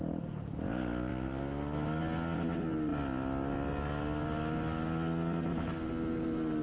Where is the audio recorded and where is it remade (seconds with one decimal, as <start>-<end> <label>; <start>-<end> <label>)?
0.0-6.6 recorded